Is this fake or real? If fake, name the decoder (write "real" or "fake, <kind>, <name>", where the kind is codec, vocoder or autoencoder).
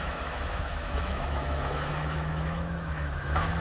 fake, autoencoder, DAC-VAE